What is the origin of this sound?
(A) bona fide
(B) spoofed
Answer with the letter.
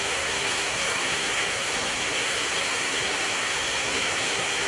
B